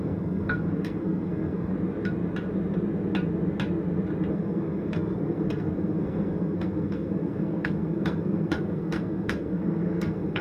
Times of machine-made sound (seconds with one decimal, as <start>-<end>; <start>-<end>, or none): 0.0-1.7; 4.3-10.4